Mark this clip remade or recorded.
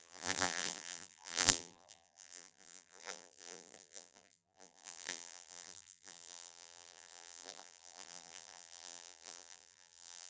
remade